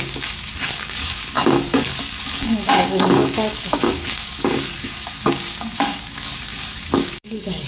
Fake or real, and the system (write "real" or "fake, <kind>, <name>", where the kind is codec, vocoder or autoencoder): fake, codec, DAC